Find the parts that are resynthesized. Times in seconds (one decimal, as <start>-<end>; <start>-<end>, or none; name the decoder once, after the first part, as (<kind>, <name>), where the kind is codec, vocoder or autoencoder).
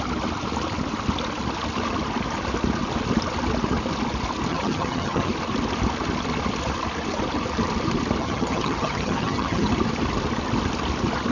4.5-5.3 (vocoder, HiFi-GAN); 8.2-9.7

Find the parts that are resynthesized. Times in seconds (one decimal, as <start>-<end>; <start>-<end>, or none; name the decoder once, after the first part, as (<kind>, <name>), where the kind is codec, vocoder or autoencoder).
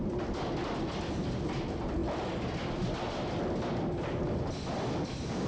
none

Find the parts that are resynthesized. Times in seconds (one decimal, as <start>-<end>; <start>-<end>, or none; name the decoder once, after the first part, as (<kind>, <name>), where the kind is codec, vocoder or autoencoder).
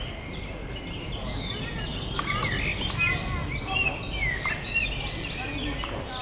0.0-1.9 (vocoder, BigVGAN v2); 3.1-6.2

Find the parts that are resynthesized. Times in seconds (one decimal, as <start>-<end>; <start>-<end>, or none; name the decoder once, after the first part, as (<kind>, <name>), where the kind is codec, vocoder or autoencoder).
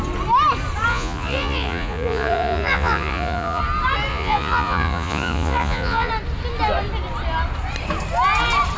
0.9-3.6 (vocoder, Vocos); 4.1-6.1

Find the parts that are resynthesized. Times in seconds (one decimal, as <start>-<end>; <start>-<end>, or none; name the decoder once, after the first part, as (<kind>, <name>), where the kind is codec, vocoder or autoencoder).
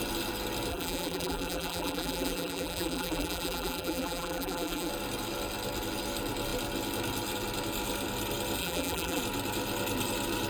0.7-4.9 (vocoder, BigVGAN v2); 8.6-9.2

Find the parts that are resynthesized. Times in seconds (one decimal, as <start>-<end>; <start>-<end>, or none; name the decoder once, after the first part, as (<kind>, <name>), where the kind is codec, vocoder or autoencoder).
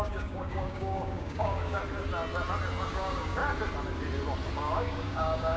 0.0-1.8 (codec, DAC); 2.9-3.4; 4.5-5.6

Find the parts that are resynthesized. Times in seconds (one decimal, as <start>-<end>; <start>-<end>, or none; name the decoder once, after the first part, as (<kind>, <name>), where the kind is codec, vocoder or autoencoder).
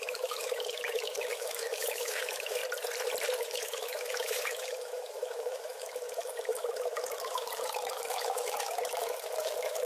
0.0-2.6 (autoencoder, DAC-VAE); 3.4-9.8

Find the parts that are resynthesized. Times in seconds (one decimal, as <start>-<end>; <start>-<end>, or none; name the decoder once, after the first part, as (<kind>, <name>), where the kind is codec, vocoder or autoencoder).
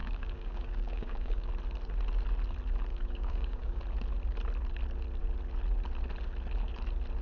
0.0-1.5 (codec, DAC); 2.9-3.8